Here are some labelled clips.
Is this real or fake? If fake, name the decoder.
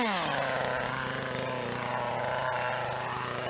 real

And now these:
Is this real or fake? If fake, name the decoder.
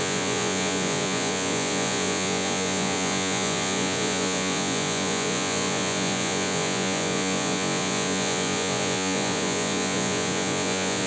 fake, vocoder, Vocos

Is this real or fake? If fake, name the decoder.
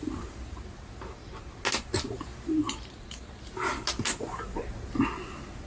real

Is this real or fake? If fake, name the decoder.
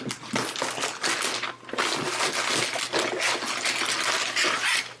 real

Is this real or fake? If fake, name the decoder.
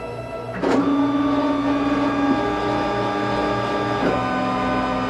real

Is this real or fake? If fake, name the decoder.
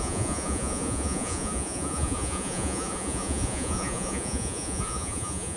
fake, vocoder, Vocos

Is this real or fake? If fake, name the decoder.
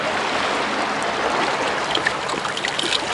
real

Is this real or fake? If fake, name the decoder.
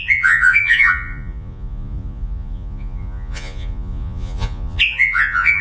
fake, vocoder, Vocos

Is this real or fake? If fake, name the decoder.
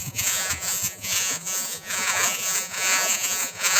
fake, vocoder, Vocos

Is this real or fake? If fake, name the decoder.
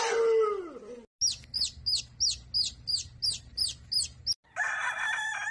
real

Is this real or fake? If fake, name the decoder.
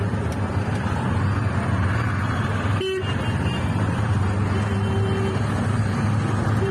real